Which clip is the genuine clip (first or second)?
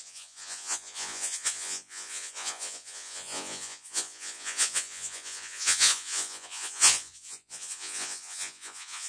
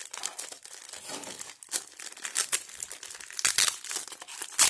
second